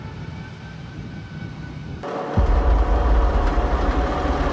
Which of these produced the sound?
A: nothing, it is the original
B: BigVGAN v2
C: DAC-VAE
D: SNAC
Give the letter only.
A